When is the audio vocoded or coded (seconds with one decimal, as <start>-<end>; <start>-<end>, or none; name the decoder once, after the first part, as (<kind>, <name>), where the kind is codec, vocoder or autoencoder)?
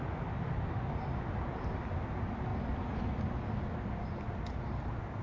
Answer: none